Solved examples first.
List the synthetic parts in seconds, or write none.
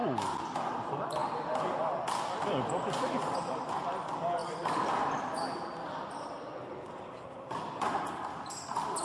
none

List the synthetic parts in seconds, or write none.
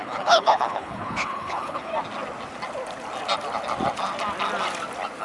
0.0-1.9 (codec, HILCodec)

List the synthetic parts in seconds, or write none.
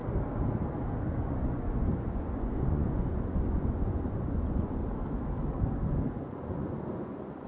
1.2-4.8 (vocoder, Vocos); 6.3-7.5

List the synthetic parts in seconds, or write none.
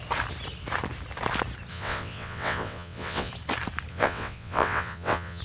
1.7-3.3 (vocoder, WaveNeXt); 3.9-5.4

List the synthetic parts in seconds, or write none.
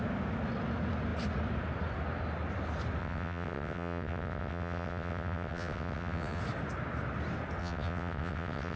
3.0-6.4 (vocoder, WaveNeXt); 7.6-8.8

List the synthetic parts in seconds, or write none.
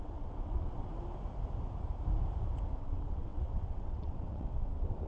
0.0-0.9 (vocoder, WaveNeXt); 2.8-5.1